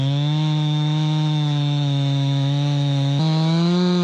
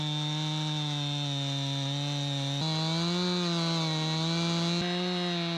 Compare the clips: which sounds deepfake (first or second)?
first